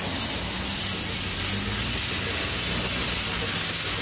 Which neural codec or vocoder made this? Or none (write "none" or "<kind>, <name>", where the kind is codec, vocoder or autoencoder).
none